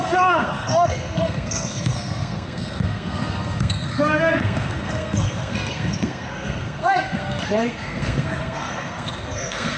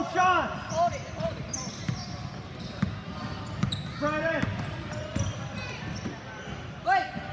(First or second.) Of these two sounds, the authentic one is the second